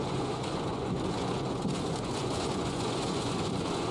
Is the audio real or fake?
fake